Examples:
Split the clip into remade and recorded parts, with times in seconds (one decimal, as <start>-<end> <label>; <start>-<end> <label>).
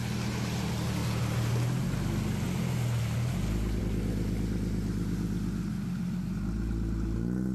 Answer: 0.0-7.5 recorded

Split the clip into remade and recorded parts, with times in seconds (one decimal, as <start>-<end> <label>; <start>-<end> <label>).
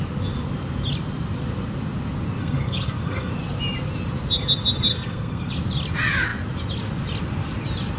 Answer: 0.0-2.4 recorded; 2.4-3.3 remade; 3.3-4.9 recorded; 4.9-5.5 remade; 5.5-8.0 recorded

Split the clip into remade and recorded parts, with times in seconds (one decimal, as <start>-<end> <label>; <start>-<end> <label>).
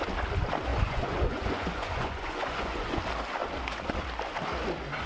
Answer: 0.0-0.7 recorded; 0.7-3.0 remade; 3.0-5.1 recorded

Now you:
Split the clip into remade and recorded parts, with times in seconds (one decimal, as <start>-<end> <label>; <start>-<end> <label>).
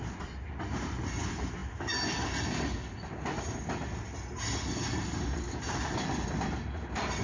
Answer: 0.0-7.2 recorded